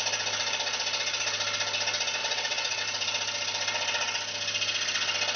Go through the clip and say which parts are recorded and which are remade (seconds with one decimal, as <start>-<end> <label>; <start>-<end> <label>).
0.0-2.2 recorded; 2.2-2.8 remade; 2.8-5.4 recorded